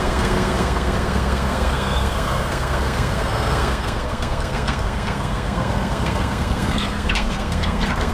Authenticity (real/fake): fake